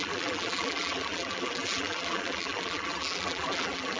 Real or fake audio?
fake